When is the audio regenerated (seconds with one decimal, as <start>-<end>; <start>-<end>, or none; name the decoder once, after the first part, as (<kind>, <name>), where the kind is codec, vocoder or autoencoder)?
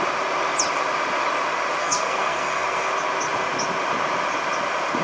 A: 1.8-2.9 (codec, SNAC)